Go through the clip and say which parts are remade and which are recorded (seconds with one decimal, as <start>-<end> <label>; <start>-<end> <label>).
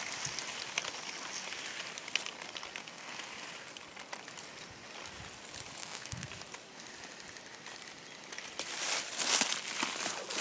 0.0-2.8 recorded; 2.8-3.3 remade; 3.3-5.8 recorded; 5.8-6.3 remade; 6.3-10.4 recorded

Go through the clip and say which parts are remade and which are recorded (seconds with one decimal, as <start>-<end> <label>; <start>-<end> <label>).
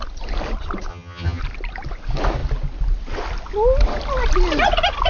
0.0-0.9 recorded; 0.9-1.4 remade; 1.4-5.1 recorded